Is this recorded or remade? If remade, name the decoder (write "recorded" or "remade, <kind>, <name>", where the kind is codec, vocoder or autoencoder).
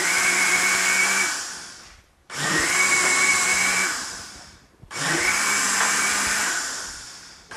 remade, vocoder, BigVGAN v2